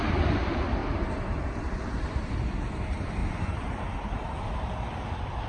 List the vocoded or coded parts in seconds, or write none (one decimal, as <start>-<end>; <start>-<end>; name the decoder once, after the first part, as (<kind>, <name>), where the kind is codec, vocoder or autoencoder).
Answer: 0.0-3.2 (vocoder, BigVGAN v2); 4.9-5.5